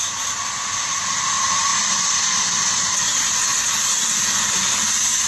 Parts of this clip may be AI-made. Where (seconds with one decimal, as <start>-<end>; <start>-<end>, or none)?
none